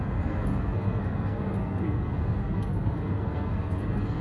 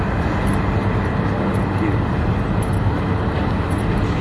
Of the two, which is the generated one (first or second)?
first